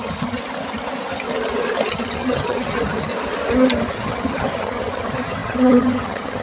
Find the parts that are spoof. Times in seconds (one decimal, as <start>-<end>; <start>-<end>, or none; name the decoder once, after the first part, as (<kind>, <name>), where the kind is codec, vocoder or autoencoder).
0.0-0.4 (vocoder, HiFi-GAN); 1.9-3.1; 3.9-6.4